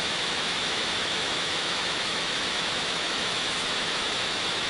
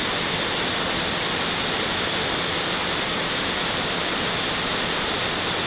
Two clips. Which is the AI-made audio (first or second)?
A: first